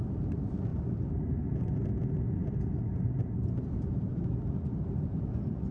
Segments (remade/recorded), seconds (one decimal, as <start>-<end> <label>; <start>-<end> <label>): 0.0-2.0 remade; 2.0-5.1 recorded; 5.1-5.7 remade